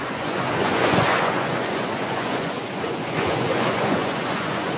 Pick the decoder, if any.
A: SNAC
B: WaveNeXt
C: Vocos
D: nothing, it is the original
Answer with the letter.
C